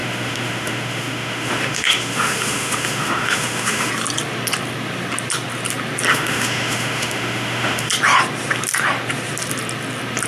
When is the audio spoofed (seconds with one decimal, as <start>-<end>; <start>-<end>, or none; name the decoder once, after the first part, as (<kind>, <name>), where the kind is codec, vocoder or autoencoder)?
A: 0.0-3.9 (autoencoder, DAC-VAE); 6.1-7.9